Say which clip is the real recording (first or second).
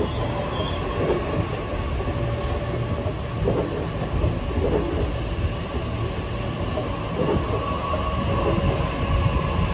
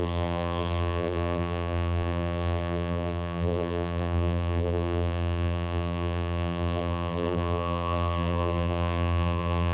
first